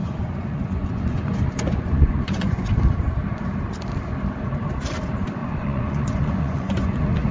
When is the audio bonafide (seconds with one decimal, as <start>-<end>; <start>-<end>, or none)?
2.7-5.4